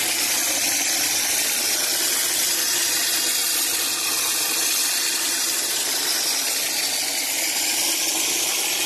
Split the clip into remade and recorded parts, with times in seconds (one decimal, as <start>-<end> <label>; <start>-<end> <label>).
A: 0.0-8.9 recorded